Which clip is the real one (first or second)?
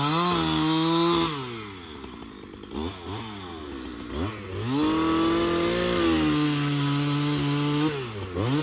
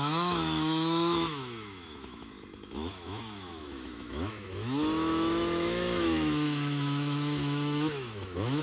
first